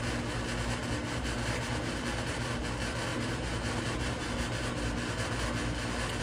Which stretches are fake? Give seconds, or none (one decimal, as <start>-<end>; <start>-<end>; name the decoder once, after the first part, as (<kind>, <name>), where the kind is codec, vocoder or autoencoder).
1.0-2.6 (vocoder, BigVGAN v2); 3.1-4.2